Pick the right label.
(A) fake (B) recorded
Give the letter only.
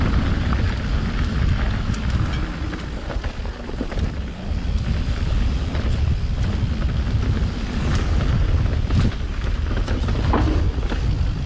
B